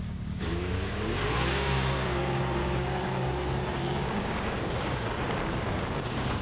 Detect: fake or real fake